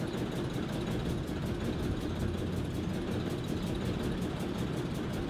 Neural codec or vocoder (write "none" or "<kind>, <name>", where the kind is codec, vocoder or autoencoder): none